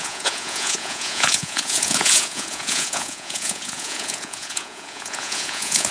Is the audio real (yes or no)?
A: no